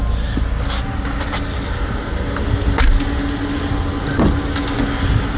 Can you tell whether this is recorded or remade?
recorded